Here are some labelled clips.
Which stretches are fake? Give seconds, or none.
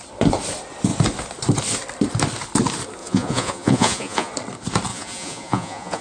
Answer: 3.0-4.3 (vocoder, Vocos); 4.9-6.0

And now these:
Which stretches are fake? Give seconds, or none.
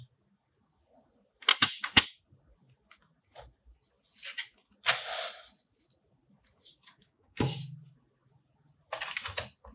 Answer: 1.5-2.2 (codec, DAC); 6.7-7.6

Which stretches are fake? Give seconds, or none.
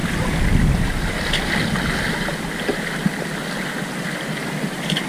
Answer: none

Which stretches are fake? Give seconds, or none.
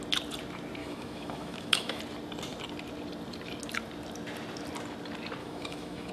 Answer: 0.8-2.0 (autoencoder, DAC-VAE); 5.4-6.1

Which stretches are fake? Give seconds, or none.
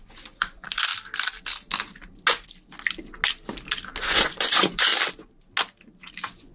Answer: 0.0-0.9 (vocoder, Vocos); 4.0-4.9; 6.1-6.5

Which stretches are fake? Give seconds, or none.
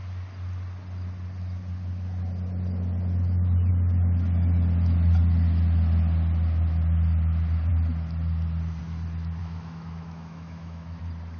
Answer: 9.4-11.0 (autoencoder, DAC-VAE)